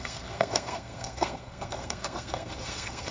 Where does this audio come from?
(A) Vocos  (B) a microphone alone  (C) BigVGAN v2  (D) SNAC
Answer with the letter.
D